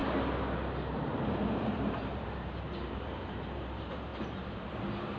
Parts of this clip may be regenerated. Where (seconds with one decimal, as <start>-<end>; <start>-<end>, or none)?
0.9-5.2